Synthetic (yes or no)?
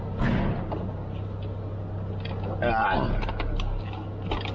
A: no